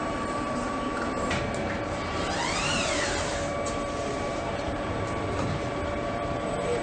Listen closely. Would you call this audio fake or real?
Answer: fake